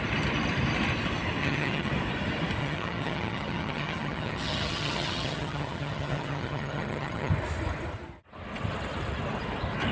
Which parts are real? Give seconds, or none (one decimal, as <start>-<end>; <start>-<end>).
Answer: 0.0-1.4; 1.9-2.6; 7.3-9.9